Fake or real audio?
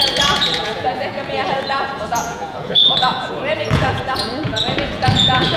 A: fake